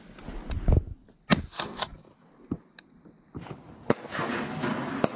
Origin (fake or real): real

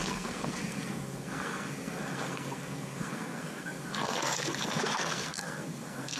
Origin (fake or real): fake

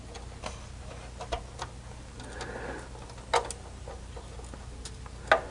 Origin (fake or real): real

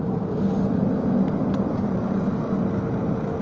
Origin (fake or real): real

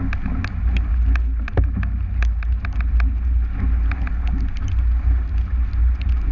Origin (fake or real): real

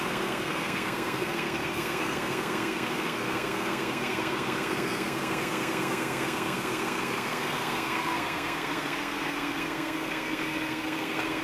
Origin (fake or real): fake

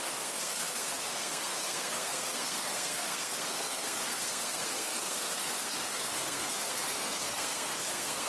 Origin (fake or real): fake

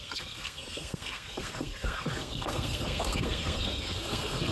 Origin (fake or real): fake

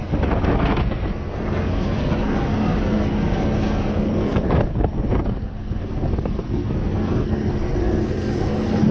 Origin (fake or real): fake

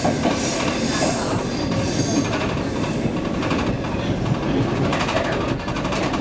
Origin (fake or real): real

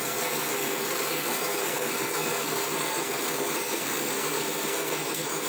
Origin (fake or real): fake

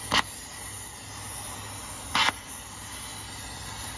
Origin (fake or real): real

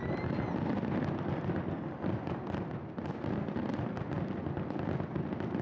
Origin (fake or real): real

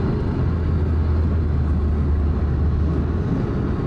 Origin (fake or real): real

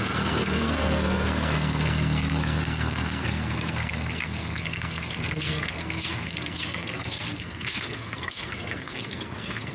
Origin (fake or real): fake